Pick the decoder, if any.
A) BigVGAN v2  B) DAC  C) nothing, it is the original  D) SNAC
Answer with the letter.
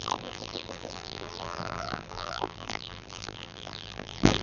A